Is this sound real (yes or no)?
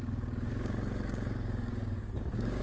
no